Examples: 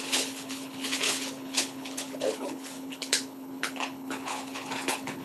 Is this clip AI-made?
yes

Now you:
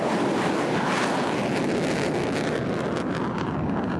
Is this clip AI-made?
no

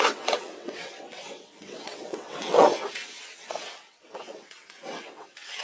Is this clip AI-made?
yes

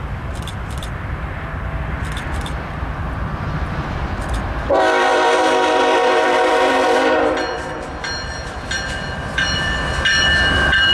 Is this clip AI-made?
yes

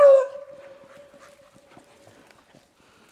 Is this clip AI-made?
yes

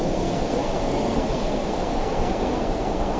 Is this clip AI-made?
yes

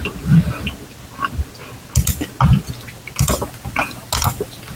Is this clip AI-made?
no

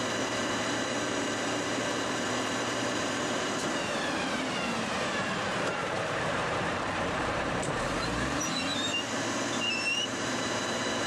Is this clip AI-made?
yes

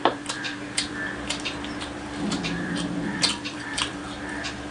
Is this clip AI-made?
yes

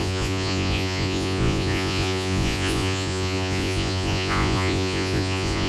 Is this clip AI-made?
yes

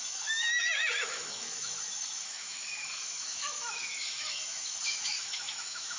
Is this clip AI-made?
yes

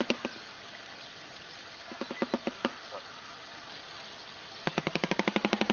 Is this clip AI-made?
no